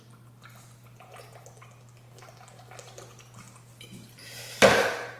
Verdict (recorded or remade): recorded